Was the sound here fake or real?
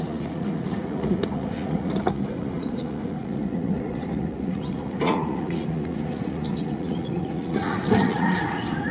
fake